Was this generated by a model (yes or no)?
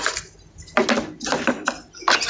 no